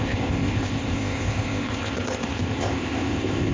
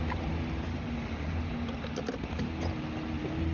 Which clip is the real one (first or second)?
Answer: second